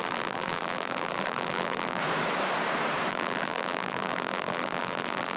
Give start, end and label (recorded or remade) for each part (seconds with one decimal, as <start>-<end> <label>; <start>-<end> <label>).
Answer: 0.0-2.0 remade; 2.0-3.1 recorded; 3.1-5.4 remade